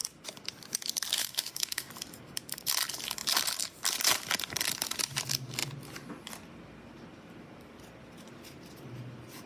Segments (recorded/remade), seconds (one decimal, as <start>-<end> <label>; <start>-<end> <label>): 0.0-1.2 recorded; 1.2-1.9 remade; 1.9-9.5 recorded